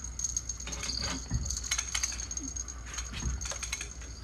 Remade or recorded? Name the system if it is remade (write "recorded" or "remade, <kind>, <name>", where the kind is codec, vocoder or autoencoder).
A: recorded